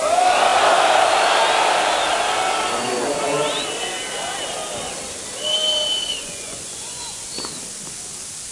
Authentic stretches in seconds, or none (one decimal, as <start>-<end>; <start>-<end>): 0.0-6.2; 7.2-8.5